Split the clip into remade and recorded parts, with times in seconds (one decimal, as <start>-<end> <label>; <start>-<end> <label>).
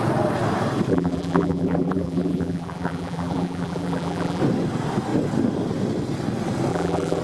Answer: 0.0-0.9 recorded; 0.9-4.4 remade; 4.4-6.7 recorded; 6.7-7.2 remade